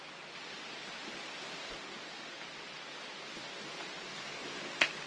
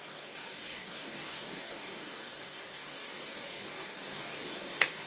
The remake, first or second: second